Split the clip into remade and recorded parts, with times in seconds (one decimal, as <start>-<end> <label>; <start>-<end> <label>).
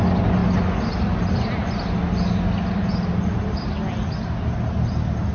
0.0-5.3 recorded